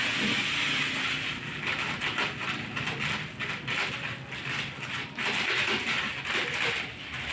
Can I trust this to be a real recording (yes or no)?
yes